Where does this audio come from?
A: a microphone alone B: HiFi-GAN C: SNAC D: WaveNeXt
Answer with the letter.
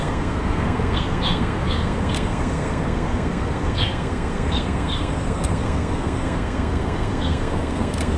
C